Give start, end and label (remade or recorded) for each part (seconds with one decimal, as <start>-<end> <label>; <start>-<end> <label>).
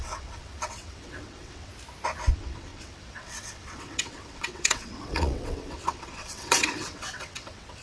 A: 0.0-1.7 remade; 1.7-2.3 recorded; 2.3-7.8 remade